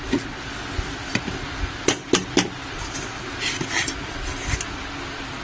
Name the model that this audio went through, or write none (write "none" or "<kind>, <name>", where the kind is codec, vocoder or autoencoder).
none